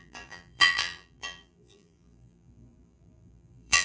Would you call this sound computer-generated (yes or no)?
yes